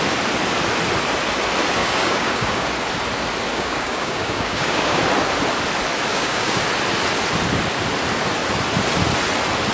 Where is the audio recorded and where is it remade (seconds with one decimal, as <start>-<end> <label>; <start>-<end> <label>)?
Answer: 0.0-1.8 recorded; 1.8-2.7 remade; 2.7-3.5 recorded; 3.5-5.0 remade; 5.0-6.1 recorded; 6.1-6.6 remade; 6.6-9.7 recorded

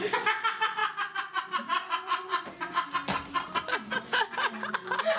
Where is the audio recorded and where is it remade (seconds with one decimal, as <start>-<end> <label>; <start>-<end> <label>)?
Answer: 0.0-0.8 recorded; 0.8-3.6 remade; 3.6-5.2 recorded

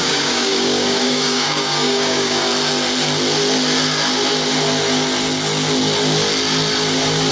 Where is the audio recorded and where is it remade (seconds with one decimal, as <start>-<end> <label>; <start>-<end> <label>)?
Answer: 0.0-2.5 remade; 2.5-7.3 recorded

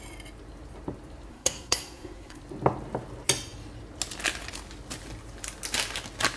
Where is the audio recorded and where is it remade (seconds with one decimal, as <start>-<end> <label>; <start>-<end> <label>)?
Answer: 0.0-1.3 recorded; 1.3-2.4 remade; 2.4-6.4 recorded

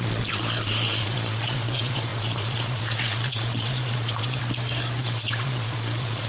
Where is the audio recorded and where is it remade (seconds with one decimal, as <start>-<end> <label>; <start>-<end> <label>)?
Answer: 0.0-4.4 remade; 4.4-5.0 recorded; 5.0-6.3 remade

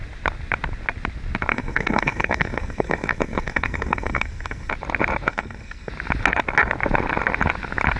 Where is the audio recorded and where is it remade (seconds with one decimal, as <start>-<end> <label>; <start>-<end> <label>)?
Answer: 0.0-1.5 recorded; 1.5-4.7 remade; 4.7-5.3 recorded; 5.3-5.9 remade; 5.9-8.0 recorded

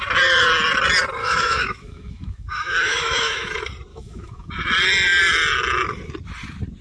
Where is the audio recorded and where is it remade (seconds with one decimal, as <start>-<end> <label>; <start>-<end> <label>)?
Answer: 0.0-1.2 recorded; 1.2-3.5 remade; 3.5-3.9 recorded; 3.9-4.5 remade; 4.5-6.8 recorded

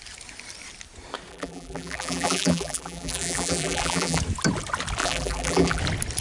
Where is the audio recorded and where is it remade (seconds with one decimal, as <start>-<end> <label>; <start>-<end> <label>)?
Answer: 0.0-1.3 recorded; 1.3-4.2 remade; 4.2-5.0 recorded; 5.0-5.8 remade; 5.8-6.2 recorded